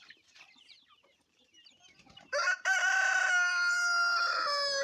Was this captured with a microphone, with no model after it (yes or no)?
no